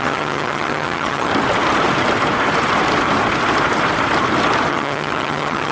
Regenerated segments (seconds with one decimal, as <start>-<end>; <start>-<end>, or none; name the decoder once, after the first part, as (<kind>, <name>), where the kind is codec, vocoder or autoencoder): 0.0-1.3 (vocoder, HiFi-GAN); 4.7-5.7